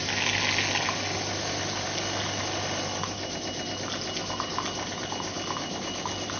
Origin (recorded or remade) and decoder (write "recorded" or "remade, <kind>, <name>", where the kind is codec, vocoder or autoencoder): recorded